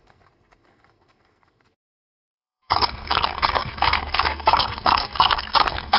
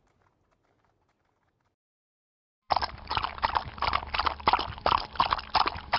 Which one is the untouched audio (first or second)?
second